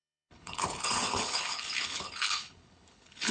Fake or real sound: fake